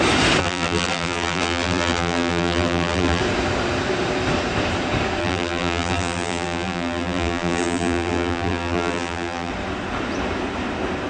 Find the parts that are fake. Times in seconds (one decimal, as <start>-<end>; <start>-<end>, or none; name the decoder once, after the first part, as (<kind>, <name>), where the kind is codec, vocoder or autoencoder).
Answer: 0.4-3.2 (vocoder, BigVGAN v2); 5.2-9.5